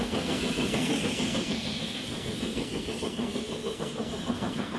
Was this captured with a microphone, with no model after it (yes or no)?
no